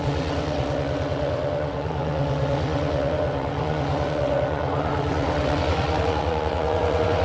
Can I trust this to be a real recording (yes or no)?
no